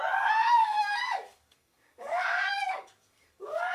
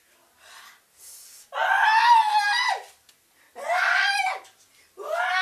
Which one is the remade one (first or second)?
first